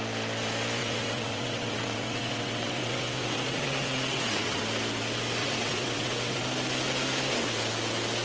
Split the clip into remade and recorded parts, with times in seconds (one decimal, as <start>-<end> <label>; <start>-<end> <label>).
0.0-0.8 recorded; 0.8-4.6 remade; 4.6-5.4 recorded; 5.4-6.4 remade; 6.4-8.2 recorded